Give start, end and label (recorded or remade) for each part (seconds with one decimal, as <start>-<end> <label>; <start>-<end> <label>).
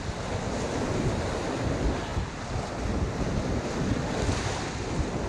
0.0-5.3 recorded